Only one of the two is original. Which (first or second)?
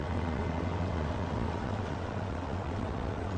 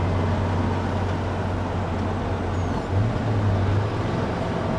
second